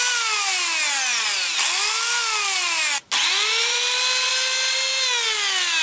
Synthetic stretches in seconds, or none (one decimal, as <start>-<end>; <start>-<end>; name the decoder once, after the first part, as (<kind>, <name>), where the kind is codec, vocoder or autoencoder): 3.6-4.3 (vocoder, BigVGAN v2)